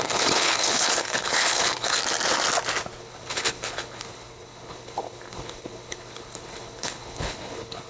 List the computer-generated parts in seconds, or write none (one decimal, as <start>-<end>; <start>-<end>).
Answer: 0.0-2.0; 3.0-7.9